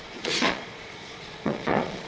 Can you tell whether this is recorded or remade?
remade